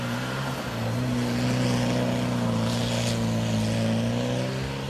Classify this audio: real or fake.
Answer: real